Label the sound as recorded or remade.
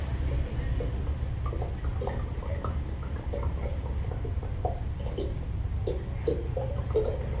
recorded